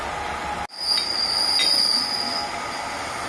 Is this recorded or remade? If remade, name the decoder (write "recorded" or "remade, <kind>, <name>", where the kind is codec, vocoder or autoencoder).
recorded